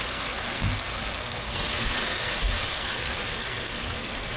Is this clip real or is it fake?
fake